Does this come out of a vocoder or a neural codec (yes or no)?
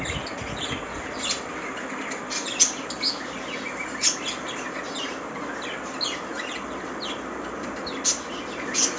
no